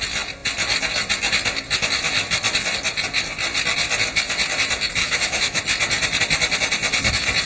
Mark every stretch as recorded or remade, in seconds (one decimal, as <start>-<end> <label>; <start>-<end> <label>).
0.0-5.0 recorded; 5.0-5.6 remade; 5.6-7.5 recorded